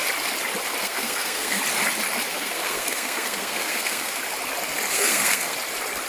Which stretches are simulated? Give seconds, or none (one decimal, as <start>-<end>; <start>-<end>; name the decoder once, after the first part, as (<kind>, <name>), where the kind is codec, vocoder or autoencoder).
0.8-1.6 (codec, SNAC); 2.3-4.2; 4.9-5.5